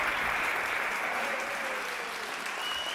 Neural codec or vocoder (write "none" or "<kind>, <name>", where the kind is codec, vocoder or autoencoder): none